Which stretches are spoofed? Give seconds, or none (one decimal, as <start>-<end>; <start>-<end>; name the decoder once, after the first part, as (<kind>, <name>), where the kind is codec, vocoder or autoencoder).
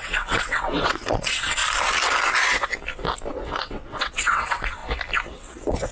0.0-1.6 (vocoder, WaveNeXt); 3.3-4.8; 5.3-5.9